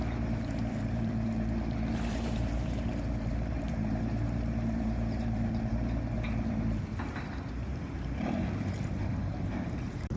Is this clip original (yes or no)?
no